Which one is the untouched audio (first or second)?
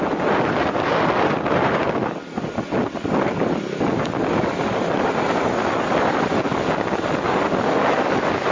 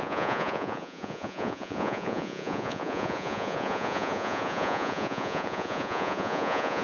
first